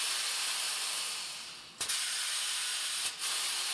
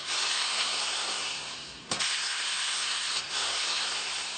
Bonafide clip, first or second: first